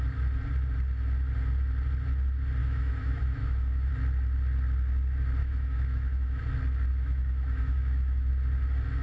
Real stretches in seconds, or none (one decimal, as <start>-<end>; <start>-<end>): 0.0-2.6; 3.9-5.4; 6.4-6.9; 8.3-9.0